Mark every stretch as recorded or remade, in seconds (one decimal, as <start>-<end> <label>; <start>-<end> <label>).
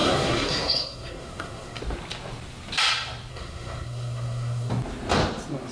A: 0.0-1.8 remade; 1.8-3.3 recorded; 3.3-4.7 remade; 4.7-5.7 recorded